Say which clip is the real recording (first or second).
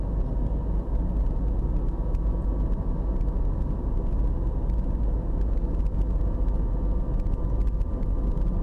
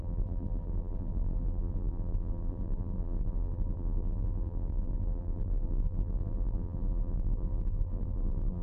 first